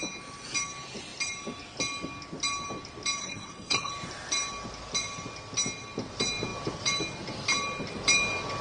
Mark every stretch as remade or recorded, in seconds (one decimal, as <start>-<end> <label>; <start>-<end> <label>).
0.0-3.2 recorded; 3.2-3.9 remade; 3.9-8.6 recorded